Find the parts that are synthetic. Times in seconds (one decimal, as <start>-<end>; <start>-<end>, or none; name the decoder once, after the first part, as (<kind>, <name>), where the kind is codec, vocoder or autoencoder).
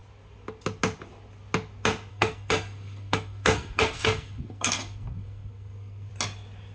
2.1-6.1 (codec, SNAC)